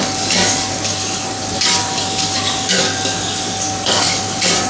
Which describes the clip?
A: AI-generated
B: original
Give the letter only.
A